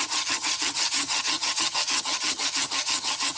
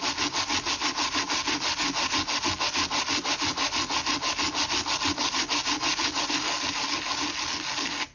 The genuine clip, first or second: second